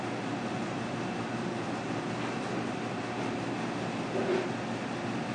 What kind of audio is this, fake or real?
real